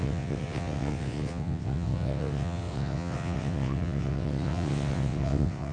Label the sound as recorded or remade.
remade